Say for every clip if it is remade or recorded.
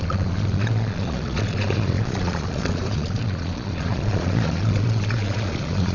remade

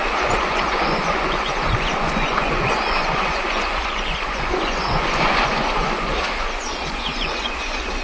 remade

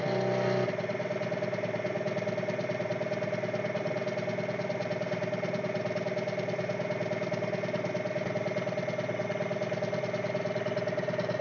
recorded